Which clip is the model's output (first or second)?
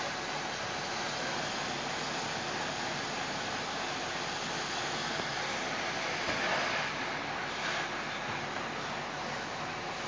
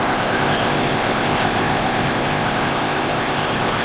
second